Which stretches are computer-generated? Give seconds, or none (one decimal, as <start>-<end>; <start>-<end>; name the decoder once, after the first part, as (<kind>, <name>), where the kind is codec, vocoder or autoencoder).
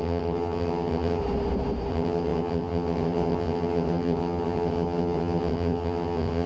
0.0-1.2 (vocoder, HiFi-GAN); 1.9-6.5